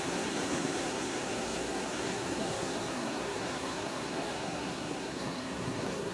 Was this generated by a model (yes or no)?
yes